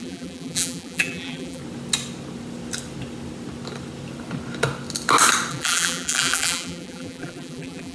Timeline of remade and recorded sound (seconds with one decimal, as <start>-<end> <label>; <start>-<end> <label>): 0.0-1.6 remade; 1.6-5.5 recorded; 5.5-7.9 remade